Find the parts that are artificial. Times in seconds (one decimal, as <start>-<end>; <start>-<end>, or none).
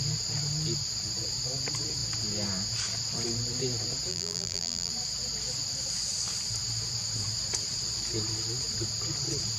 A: 4.1-4.9